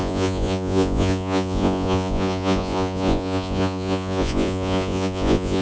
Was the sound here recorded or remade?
remade